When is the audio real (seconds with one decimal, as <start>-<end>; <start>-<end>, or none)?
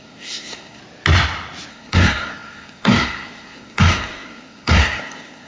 0.8-1.7